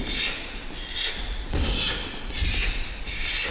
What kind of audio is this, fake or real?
real